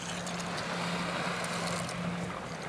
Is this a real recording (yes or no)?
yes